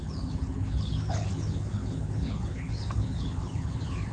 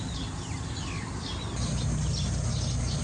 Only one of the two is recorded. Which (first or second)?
second